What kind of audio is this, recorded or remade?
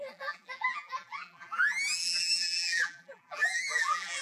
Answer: remade